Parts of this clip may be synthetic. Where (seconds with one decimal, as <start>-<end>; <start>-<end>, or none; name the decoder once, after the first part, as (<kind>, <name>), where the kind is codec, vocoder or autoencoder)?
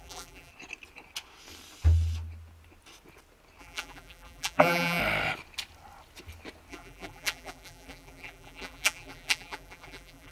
0.0-0.5 (vocoder, BigVGAN v2); 3.6-5.0; 6.7-10.3